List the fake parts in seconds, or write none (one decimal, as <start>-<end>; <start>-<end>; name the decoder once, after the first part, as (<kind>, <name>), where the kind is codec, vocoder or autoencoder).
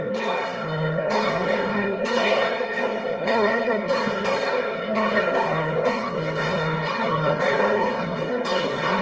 0.0-9.0 (codec, SNAC)